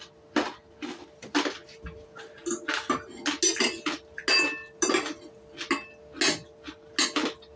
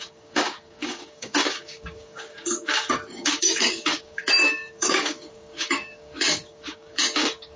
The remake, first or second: second